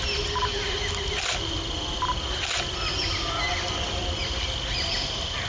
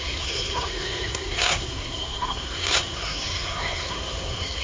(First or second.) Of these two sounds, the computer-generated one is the second